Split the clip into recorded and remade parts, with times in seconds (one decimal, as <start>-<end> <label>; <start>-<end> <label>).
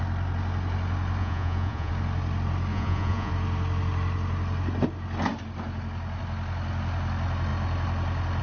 0.0-1.2 recorded; 1.2-1.9 remade; 1.9-2.7 recorded; 2.7-3.3 remade; 3.3-8.4 recorded